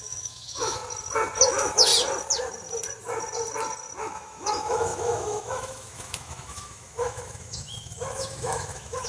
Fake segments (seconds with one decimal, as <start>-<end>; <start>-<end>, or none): 0.0-0.8; 1.5-1.9; 4.0-9.1